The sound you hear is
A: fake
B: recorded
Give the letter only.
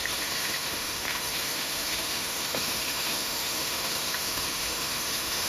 A